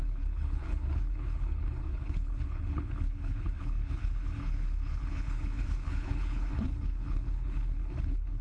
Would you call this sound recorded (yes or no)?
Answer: no